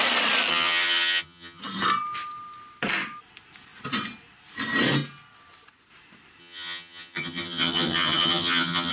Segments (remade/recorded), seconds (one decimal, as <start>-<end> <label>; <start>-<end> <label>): 0.0-0.5 recorded; 0.5-1.6 remade; 1.6-6.4 recorded; 6.4-8.9 remade